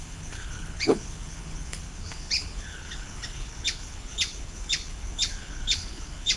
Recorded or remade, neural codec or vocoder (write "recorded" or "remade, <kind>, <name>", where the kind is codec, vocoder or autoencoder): remade, codec, HILCodec